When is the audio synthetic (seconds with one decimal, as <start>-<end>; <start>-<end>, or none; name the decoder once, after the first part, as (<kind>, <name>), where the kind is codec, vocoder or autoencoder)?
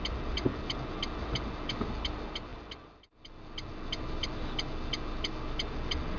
none